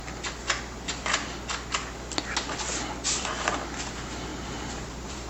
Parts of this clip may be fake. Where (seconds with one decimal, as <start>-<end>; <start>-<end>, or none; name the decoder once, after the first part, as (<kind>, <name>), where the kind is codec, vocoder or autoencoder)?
4.3-5.3 (vocoder, BigVGAN v2)